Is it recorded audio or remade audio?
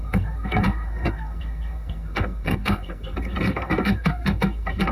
remade